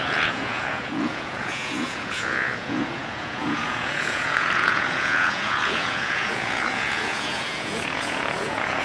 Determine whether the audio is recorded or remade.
remade